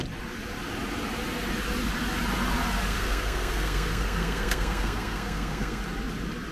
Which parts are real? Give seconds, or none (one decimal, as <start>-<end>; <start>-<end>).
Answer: 0.0-2.9; 5.8-6.5